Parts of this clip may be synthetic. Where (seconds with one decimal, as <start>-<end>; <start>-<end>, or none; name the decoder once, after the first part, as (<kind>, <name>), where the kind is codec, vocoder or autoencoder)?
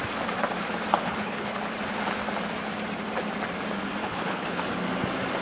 1.0-1.6 (codec, HILCodec); 4.0-4.6